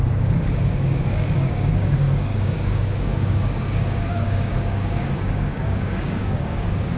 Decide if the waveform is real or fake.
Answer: fake